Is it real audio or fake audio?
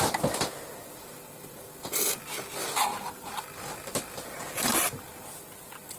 real